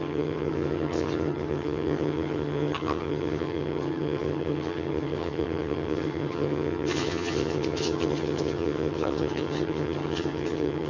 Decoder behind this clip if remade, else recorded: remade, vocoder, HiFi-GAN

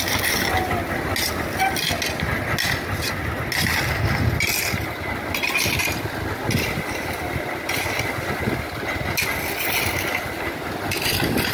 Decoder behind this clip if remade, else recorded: recorded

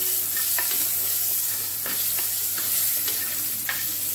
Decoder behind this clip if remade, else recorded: recorded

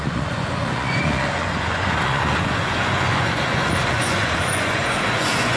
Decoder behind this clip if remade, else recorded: remade, vocoder, Vocos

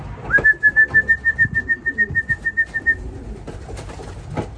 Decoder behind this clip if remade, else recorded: recorded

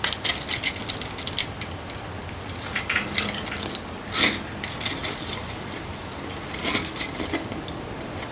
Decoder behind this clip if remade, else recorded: recorded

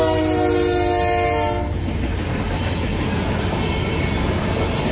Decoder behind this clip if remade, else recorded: recorded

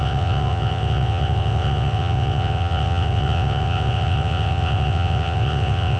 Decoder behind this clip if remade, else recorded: remade, vocoder, WaveNeXt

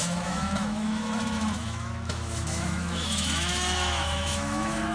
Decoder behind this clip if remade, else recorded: remade, autoencoder, DAC-VAE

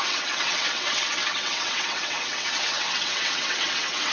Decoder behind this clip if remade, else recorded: remade, vocoder, WaveNeXt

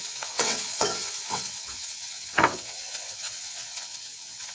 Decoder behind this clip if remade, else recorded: remade, vocoder, WaveNeXt